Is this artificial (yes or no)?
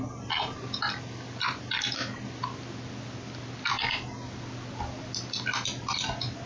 no